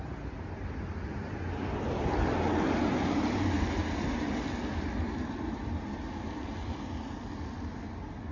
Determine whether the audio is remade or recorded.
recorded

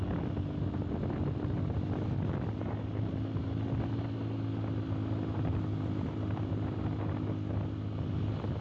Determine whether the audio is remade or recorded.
recorded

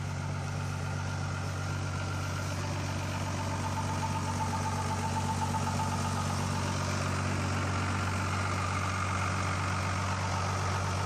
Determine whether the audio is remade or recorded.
recorded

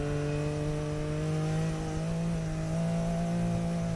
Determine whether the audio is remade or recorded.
recorded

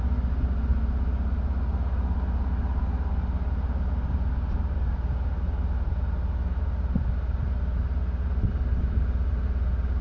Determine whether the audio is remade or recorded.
recorded